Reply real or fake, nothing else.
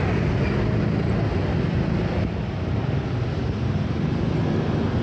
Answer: real